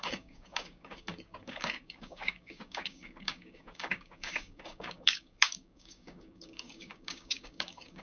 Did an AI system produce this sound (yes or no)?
yes